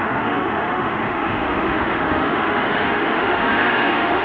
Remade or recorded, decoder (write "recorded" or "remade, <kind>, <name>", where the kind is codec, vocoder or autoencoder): remade, autoencoder, DAC-VAE